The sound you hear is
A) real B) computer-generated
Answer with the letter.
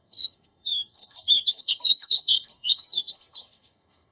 B